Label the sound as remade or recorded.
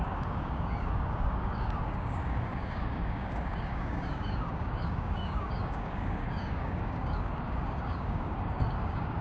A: remade